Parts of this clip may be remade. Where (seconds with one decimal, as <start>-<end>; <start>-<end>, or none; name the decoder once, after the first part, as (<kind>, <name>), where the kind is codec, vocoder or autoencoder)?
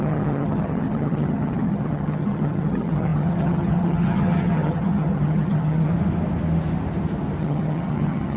0.0-5.9 (vocoder, HiFi-GAN); 7.4-8.4